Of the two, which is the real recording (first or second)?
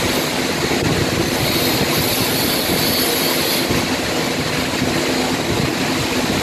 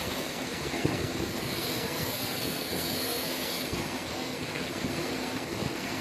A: first